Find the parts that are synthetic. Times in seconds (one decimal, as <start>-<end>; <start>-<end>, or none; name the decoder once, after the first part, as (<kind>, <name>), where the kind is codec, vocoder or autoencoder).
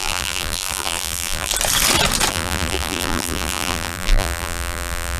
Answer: 0.0-1.5 (vocoder, BigVGAN v2); 2.3-5.2